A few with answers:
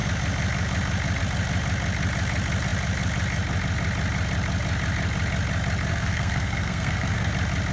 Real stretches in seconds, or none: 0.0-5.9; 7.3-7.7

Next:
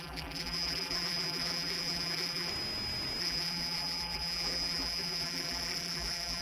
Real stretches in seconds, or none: 2.5-3.2

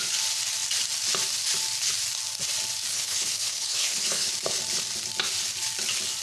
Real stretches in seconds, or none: 0.0-2.9; 4.3-6.2

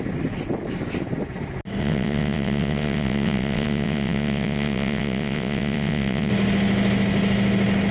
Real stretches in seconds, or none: 0.0-1.8; 6.3-7.9

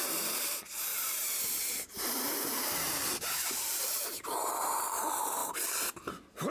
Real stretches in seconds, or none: 0.0-0.9; 4.8-6.5

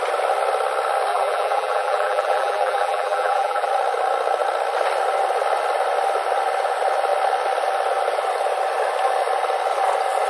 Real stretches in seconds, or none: 0.0-1.1; 3.7-10.3

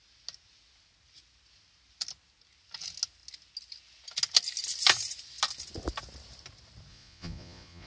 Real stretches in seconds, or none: 0.0-6.9

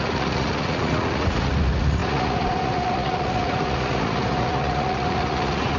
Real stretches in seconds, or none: none